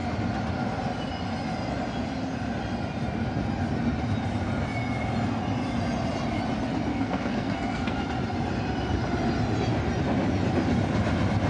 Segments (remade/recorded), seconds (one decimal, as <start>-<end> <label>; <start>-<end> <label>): 0.0-6.9 recorded; 6.9-8.0 remade; 8.0-11.5 recorded